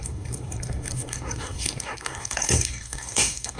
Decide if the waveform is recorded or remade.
remade